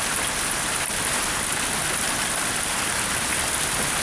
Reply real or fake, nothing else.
real